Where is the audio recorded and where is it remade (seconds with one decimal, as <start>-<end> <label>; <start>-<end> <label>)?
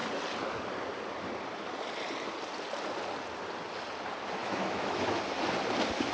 0.0-4.4 recorded; 4.4-5.2 remade; 5.2-6.1 recorded